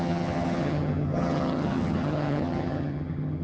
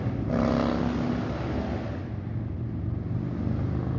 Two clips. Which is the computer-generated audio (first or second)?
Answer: first